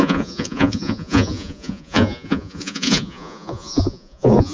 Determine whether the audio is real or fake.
fake